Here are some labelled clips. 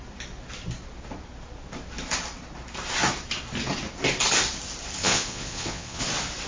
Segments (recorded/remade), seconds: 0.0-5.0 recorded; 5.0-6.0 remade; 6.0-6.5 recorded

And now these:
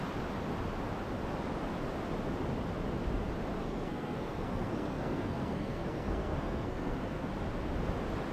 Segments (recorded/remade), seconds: 0.0-3.6 recorded; 3.6-7.3 remade; 7.3-8.3 recorded

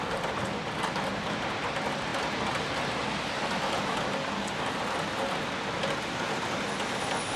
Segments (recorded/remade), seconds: 0.0-7.4 recorded

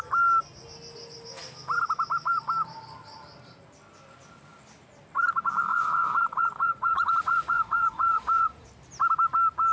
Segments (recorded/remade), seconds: 0.0-5.7 recorded; 5.7-8.7 remade; 8.7-9.7 recorded

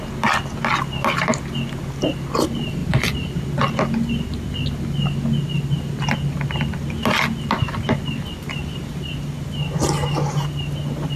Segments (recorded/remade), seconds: 0.0-11.2 recorded

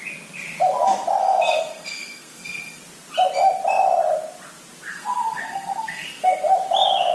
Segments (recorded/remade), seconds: 0.0-1.2 recorded; 1.2-2.8 remade; 2.8-4.9 recorded; 4.9-6.5 remade; 6.5-7.1 recorded